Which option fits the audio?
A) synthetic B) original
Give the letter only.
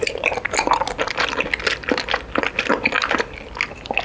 B